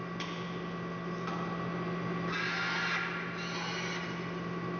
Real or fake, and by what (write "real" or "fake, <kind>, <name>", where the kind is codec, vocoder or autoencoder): real